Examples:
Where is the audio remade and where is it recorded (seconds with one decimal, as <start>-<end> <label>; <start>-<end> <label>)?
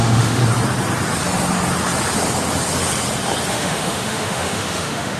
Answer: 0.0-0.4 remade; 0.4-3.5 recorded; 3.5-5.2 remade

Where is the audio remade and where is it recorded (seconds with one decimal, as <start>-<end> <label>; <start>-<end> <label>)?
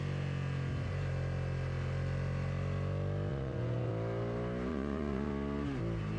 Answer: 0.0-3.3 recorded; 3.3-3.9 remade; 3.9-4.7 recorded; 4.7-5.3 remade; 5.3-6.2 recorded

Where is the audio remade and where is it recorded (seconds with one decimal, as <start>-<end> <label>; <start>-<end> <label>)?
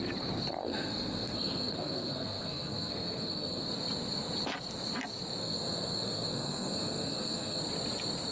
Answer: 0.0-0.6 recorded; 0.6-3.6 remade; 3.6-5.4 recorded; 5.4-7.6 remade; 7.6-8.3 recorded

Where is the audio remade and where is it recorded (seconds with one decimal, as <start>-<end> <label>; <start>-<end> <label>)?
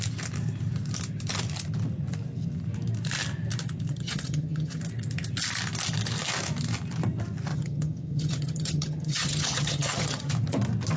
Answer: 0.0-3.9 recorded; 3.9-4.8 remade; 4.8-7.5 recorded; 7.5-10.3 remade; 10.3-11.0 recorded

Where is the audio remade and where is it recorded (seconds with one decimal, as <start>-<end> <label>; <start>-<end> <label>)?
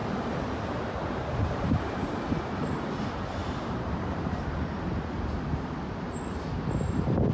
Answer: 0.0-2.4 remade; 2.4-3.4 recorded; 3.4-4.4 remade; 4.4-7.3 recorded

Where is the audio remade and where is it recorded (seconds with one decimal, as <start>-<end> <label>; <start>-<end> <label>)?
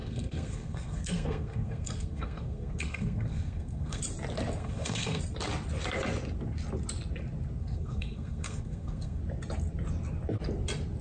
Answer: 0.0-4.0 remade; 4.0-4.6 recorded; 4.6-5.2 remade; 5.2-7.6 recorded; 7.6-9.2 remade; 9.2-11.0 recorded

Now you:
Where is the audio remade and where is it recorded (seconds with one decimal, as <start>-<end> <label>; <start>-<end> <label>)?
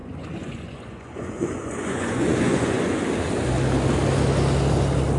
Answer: 0.0-3.0 remade; 3.0-5.2 recorded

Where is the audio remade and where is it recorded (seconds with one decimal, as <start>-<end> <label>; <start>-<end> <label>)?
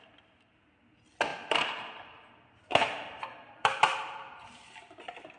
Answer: 0.0-1.3 recorded; 1.3-4.5 remade; 4.5-5.4 recorded